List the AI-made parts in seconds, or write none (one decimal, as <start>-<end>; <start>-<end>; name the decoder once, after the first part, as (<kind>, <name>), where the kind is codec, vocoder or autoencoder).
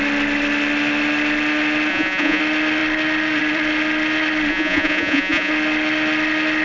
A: 1.9-2.4 (vocoder, Vocos); 4.5-5.5